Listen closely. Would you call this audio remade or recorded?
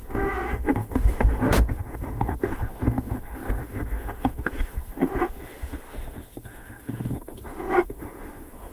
remade